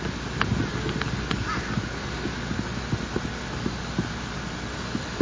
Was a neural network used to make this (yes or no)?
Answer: no